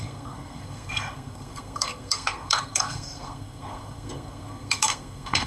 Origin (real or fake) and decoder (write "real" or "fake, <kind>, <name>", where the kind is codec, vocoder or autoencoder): fake, codec, SNAC